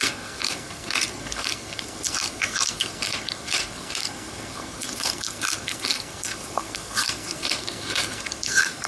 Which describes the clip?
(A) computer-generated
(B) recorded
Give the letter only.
A